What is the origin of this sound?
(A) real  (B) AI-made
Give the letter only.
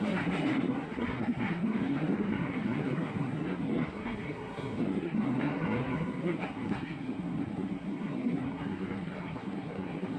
B